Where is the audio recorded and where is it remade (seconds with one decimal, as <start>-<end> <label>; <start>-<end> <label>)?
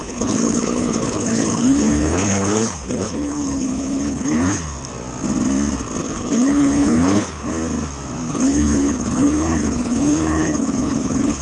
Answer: 0.0-4.6 remade; 4.6-6.0 recorded; 6.0-7.5 remade; 7.5-8.3 recorded; 8.3-11.4 remade